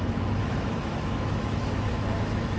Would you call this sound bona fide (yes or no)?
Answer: no